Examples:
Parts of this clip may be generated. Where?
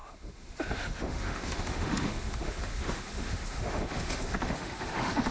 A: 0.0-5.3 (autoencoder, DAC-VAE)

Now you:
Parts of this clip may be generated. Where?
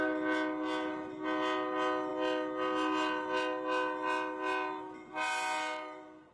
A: none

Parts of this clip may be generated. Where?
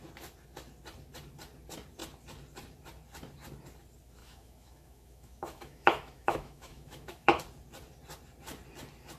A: 4.2-7.4 (autoencoder, DAC-VAE)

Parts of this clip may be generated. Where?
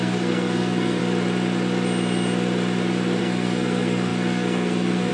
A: 0.0-1.0 (codec, SNAC); 3.2-5.1